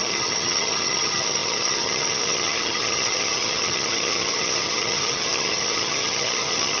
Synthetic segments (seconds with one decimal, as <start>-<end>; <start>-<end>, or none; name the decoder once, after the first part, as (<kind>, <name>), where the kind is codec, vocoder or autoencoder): 0.0-6.8 (vocoder, HiFi-GAN)